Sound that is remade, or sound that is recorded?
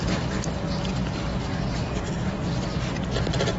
recorded